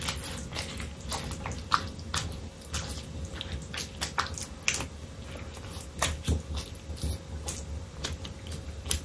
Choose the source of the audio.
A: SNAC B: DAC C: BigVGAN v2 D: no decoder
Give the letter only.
D